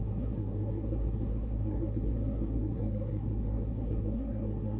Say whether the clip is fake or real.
fake